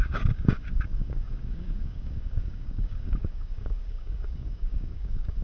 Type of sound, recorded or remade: remade